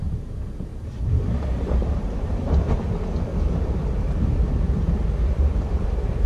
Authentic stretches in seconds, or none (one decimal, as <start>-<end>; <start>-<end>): 0.0-0.7; 2.7-3.3